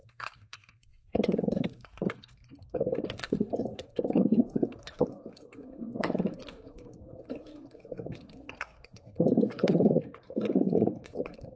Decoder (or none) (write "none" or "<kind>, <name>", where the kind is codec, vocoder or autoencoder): codec, SNAC